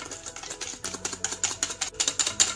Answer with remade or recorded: recorded